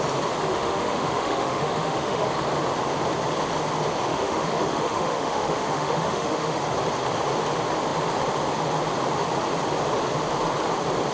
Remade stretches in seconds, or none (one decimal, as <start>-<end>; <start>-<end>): 0.5-2.3; 4.1-6.6